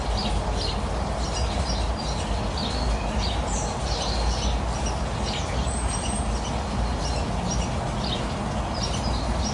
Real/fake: real